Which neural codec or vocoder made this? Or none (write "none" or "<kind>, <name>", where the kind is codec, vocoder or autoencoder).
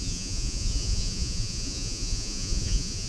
vocoder, Vocos